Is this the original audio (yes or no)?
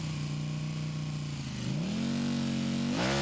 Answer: yes